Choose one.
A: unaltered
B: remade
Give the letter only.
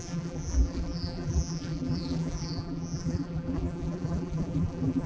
B